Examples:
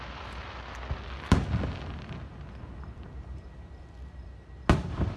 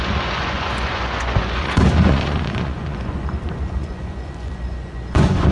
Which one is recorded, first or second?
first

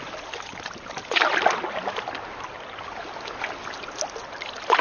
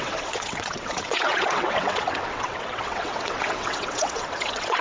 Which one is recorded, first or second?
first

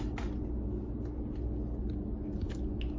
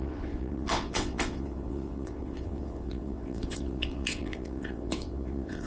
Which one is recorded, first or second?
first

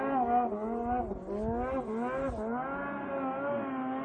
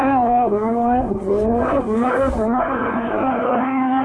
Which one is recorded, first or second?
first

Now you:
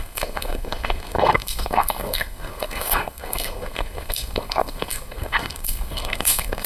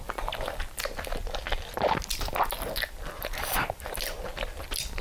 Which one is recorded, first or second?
second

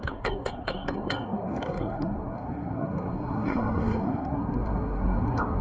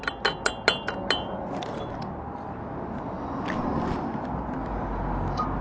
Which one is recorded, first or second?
second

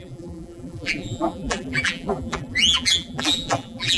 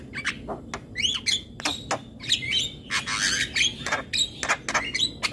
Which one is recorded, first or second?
second